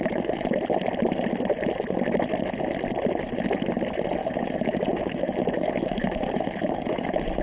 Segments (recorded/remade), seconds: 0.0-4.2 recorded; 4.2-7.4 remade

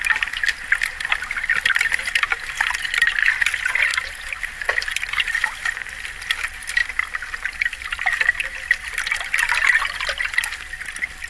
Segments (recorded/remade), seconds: 0.0-3.9 recorded; 3.9-4.5 remade; 4.5-11.3 recorded

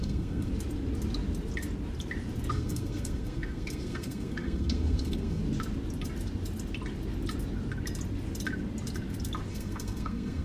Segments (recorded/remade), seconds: 0.0-0.5 remade; 0.5-2.5 recorded; 2.5-5.4 remade; 5.4-9.5 recorded; 9.5-10.4 remade

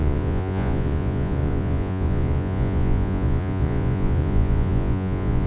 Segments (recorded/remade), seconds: 0.0-5.5 remade

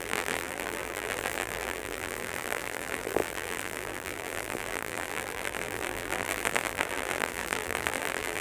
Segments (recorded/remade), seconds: 0.0-8.4 remade

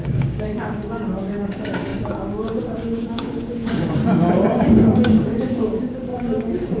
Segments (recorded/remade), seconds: 0.0-4.0 remade; 4.0-4.6 recorded; 4.6-6.8 remade